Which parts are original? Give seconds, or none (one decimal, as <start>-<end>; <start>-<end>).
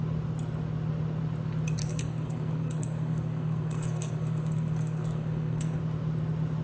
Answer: 0.0-1.8; 5.8-6.6